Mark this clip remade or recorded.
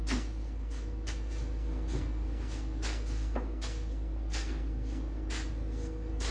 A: remade